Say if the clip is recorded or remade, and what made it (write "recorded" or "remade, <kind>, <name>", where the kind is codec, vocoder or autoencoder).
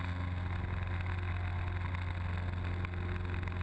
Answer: recorded